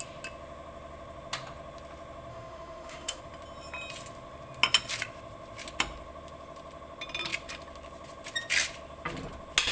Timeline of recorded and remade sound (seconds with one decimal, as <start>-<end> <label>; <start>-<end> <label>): 0.0-2.3 recorded; 2.3-3.2 remade; 3.2-9.7 recorded